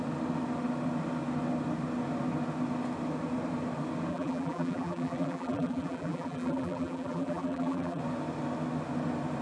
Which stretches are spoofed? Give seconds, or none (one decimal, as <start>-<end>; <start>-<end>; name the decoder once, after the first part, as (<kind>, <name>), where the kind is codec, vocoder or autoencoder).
4.1-8.0 (vocoder, BigVGAN v2)